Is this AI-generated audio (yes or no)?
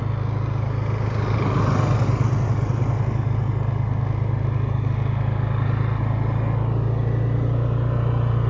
no